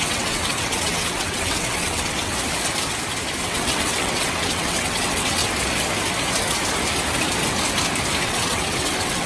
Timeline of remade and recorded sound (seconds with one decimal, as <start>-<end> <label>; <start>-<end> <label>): 0.0-2.3 remade; 2.3-3.4 recorded; 3.4-5.4 remade; 5.4-8.2 recorded; 8.2-9.3 remade

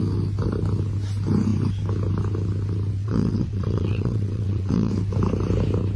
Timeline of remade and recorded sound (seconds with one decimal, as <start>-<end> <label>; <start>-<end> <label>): 0.0-3.0 recorded; 3.0-4.9 remade; 4.9-6.0 recorded

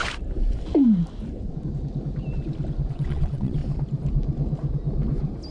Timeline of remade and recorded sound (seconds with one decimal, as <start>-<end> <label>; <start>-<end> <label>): 0.0-2.9 recorded; 2.9-3.6 remade; 3.6-5.5 recorded

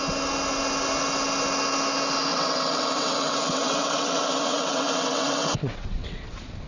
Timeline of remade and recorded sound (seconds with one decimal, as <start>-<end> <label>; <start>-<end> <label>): 0.0-2.3 recorded; 2.3-6.3 remade; 6.3-6.7 recorded

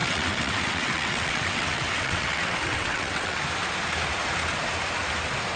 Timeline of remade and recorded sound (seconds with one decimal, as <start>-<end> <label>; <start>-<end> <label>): 0.0-3.4 remade; 3.4-5.6 recorded

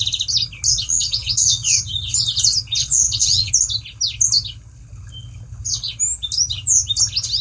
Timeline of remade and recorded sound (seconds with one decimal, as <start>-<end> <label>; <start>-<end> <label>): 0.0-0.7 recorded; 0.7-1.8 remade; 1.8-2.8 recorded; 2.8-3.5 remade; 3.5-7.4 recorded

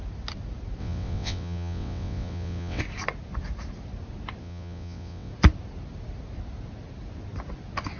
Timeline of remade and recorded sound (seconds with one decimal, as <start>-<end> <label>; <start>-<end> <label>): 0.0-0.8 recorded; 0.8-2.8 remade; 2.8-4.4 recorded; 4.4-5.3 remade; 5.3-8.0 recorded